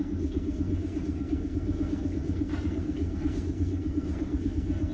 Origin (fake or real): fake